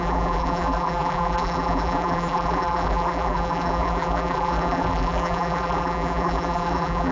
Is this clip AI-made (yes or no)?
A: yes